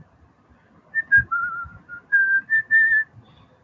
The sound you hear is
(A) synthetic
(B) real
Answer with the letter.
B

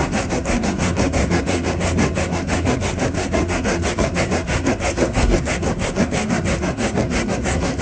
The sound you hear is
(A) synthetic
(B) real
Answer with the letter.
A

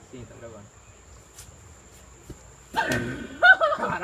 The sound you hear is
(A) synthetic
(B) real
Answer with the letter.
B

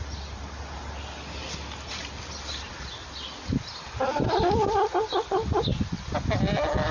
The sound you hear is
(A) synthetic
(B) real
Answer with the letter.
B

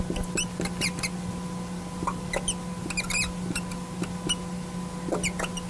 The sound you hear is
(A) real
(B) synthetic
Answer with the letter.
A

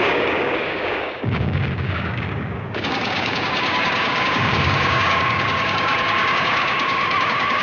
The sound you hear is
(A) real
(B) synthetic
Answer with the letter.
B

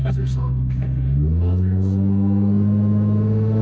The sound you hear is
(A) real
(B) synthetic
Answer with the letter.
B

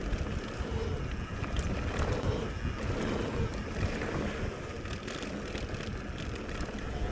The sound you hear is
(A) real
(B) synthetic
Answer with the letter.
A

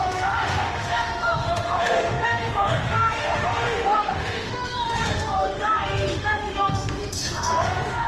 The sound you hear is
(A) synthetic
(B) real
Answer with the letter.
A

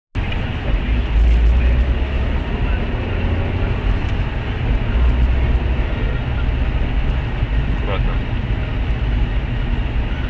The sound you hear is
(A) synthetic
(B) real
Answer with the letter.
B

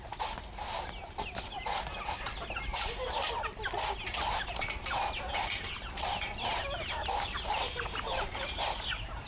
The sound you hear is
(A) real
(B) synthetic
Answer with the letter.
A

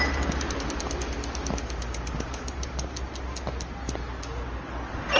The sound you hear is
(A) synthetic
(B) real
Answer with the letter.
B